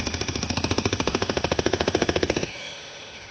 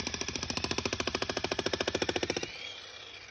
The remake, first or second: first